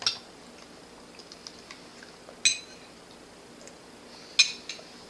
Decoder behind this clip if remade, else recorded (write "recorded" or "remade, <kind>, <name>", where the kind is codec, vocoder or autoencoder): recorded